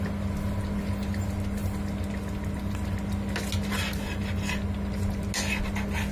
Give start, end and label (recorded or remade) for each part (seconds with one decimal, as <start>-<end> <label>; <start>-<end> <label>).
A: 0.0-6.1 recorded